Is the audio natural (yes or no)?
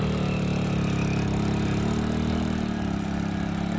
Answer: yes